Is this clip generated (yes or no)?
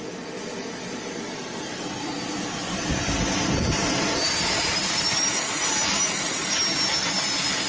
no